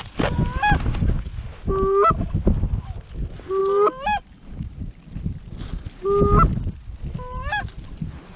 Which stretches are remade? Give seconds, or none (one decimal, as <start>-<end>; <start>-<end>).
3.6-5.2